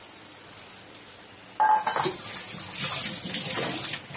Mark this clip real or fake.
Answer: real